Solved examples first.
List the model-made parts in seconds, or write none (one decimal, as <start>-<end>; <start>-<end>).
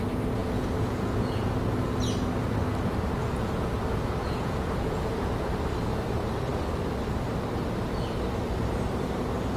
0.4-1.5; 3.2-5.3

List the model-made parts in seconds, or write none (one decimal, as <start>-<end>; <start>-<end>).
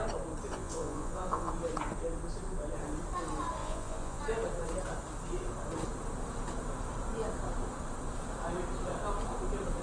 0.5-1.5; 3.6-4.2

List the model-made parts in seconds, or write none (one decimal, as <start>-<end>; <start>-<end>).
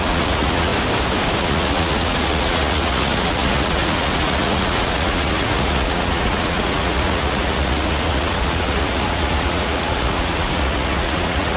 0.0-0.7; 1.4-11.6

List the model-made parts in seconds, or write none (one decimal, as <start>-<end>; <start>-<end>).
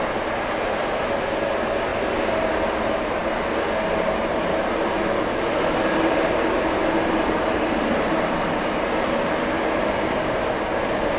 none